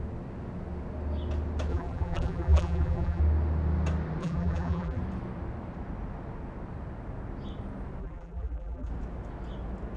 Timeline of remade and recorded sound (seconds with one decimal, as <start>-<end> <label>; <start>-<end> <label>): 0.0-1.7 recorded; 1.7-3.2 remade; 3.2-4.2 recorded; 4.2-5.0 remade; 5.0-8.0 recorded; 8.0-8.9 remade; 8.9-10.0 recorded